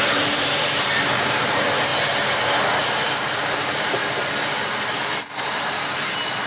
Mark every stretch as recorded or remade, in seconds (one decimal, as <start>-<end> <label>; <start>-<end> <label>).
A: 0.0-1.9 remade; 1.9-3.1 recorded; 3.1-4.0 remade; 4.0-5.7 recorded; 5.7-6.5 remade